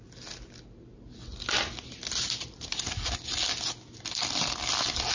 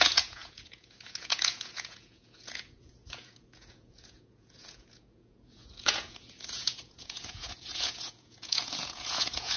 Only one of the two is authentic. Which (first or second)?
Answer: first